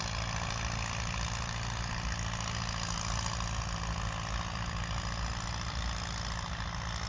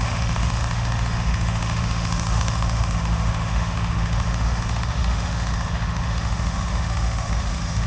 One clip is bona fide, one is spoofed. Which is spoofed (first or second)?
second